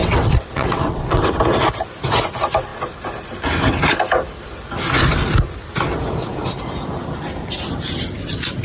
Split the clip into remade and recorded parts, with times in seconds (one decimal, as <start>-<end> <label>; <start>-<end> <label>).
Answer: 0.0-1.4 remade; 1.4-8.6 recorded